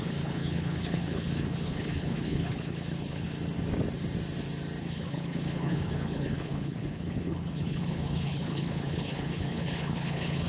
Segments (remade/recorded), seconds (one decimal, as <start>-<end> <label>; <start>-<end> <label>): 0.0-3.3 remade; 3.3-4.8 recorded; 4.8-10.5 remade